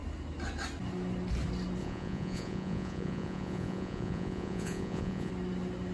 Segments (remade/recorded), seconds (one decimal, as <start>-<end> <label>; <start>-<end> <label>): 0.0-1.8 recorded; 1.8-5.3 remade; 5.3-5.9 recorded